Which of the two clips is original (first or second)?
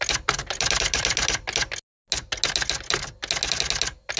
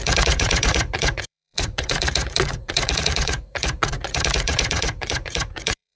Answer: first